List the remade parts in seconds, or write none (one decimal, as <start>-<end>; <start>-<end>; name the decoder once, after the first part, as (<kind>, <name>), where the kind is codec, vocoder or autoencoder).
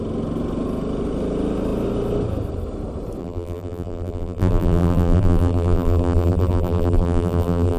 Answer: 3.2-7.8 (vocoder, BigVGAN v2)